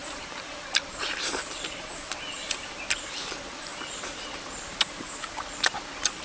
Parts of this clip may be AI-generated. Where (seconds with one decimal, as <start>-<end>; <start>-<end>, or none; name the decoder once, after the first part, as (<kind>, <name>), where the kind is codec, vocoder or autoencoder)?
0.0-2.8 (vocoder, BigVGAN v2)